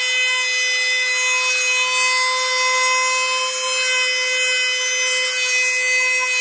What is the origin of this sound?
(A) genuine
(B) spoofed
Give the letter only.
A